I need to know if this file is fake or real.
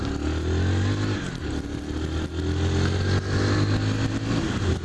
real